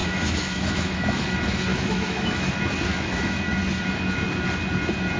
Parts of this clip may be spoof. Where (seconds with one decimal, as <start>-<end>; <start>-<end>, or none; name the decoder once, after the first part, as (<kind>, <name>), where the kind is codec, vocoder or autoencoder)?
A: 0.0-1.2 (autoencoder, DAC-VAE); 1.7-2.5; 2.9-3.4